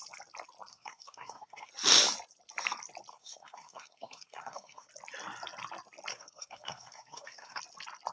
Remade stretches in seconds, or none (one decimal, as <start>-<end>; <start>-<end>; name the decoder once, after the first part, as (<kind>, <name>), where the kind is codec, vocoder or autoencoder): 0.7-1.7 (codec, SNAC); 3.1-4.9; 6.1-7.6

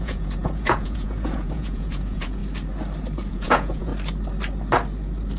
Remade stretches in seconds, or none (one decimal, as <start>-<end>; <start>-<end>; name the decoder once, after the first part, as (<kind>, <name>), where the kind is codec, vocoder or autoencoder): 0.0-2.4 (vocoder, Vocos); 3.3-3.9

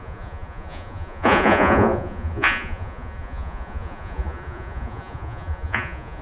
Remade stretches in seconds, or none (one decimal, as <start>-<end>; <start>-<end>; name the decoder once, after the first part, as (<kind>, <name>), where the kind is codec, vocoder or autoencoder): 0.0-6.2 (vocoder, Vocos)

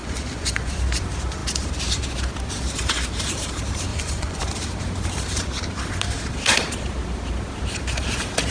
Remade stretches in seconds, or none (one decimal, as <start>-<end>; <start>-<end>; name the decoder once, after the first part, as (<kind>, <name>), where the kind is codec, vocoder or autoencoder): 0.0-0.7 (vocoder, Vocos); 3.9-4.4

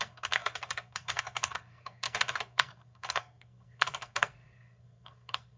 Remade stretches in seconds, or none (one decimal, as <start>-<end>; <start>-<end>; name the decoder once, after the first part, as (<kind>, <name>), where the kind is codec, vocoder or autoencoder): 0.0-5.6 (codec, SNAC)